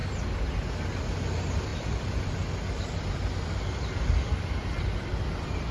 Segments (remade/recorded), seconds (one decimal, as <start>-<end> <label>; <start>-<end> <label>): 0.0-5.7 recorded